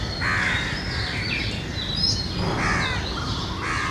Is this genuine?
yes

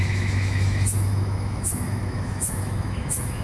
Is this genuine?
no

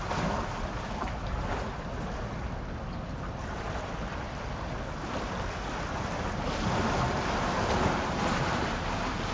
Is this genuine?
yes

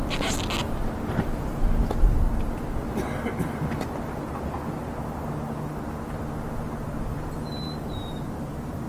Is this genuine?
yes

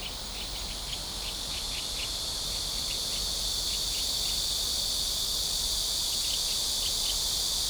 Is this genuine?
yes